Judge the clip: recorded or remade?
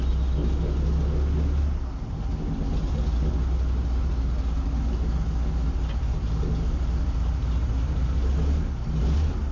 recorded